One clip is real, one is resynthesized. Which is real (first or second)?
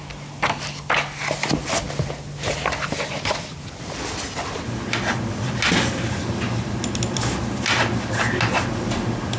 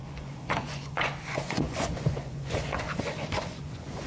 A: first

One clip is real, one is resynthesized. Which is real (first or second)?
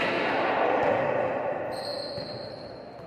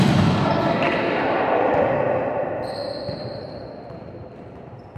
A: first